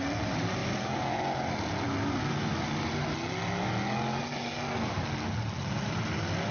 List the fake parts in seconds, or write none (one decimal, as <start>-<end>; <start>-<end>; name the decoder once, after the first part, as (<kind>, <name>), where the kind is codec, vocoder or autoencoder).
none